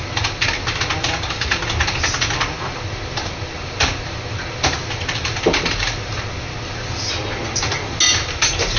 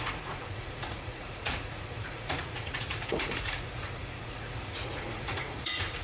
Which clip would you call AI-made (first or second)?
second